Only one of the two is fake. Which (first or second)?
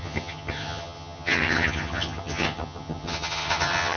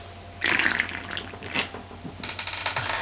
first